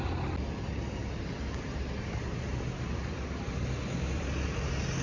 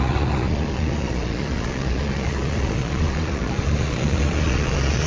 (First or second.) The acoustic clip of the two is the first